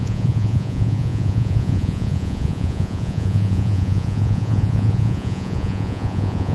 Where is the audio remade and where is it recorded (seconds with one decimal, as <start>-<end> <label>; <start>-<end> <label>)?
0.0-6.5 remade

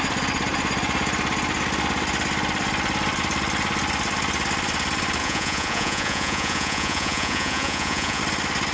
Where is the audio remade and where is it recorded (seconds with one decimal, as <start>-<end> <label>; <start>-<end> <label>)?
0.0-5.2 recorded; 5.2-8.2 remade; 8.2-8.7 recorded

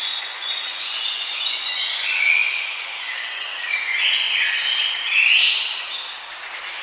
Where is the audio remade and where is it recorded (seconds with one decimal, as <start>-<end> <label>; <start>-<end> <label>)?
0.0-4.6 remade; 4.6-6.8 recorded

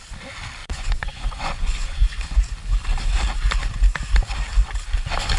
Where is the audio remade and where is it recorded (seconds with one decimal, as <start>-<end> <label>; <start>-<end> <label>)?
0.0-0.6 recorded; 0.6-2.4 remade; 2.4-5.4 recorded